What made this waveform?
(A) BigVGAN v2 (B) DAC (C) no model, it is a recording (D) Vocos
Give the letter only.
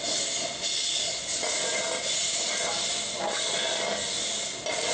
C